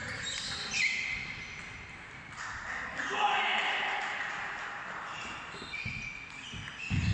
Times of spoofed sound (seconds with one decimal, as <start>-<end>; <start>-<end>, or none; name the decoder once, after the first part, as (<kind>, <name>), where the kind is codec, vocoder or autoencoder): 0.0-0.5 (vocoder, BigVGAN v2); 3.5-4.3; 5.1-5.6

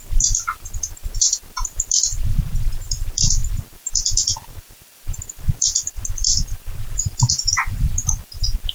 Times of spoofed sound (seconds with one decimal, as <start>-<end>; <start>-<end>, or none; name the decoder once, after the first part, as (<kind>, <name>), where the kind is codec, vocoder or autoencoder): 0.0-8.7 (vocoder, BigVGAN v2)

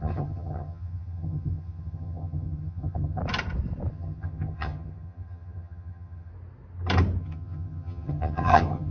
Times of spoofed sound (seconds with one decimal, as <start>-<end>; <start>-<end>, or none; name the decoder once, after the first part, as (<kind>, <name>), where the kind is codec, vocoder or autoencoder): 0.0-3.2 (vocoder, HiFi-GAN); 3.9-6.3; 7.2-8.9

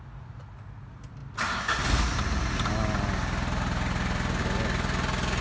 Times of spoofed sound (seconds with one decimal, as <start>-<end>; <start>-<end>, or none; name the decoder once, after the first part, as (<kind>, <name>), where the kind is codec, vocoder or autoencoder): none

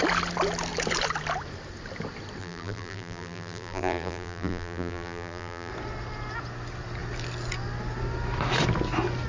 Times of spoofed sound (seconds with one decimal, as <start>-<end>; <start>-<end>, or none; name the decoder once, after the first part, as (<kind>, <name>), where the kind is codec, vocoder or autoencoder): 2.4-5.7 (vocoder, BigVGAN v2)

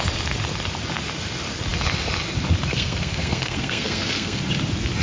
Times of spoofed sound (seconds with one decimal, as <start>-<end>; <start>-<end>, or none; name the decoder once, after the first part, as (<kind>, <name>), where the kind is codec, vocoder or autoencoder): 2.7-4.4 (codec, SNAC)

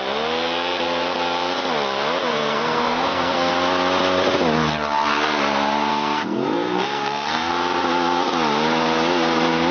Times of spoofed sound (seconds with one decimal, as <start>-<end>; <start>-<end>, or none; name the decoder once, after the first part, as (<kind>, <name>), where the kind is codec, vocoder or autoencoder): 2.3-3.5 (codec, SNAC); 5.9-7.5

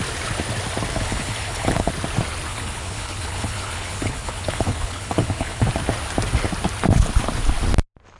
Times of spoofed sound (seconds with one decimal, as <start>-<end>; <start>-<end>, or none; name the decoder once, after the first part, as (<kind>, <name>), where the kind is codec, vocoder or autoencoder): 0.9-1.9 (codec, HILCodec); 2.5-5.7